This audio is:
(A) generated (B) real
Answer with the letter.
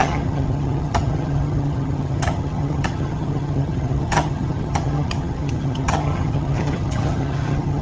A